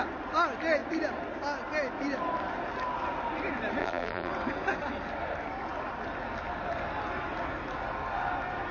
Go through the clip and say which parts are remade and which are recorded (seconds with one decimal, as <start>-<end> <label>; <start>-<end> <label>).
0.0-3.8 recorded; 3.8-4.3 remade; 4.3-8.7 recorded